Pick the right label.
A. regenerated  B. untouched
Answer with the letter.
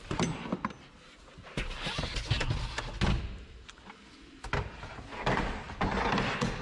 B